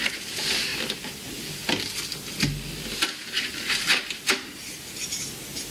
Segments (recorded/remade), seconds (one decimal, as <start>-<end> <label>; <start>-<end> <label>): 0.0-5.7 recorded